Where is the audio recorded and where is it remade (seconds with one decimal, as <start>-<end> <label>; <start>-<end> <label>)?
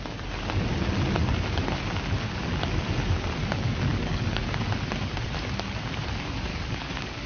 0.0-3.9 recorded; 3.9-4.5 remade; 4.5-6.5 recorded; 6.5-7.3 remade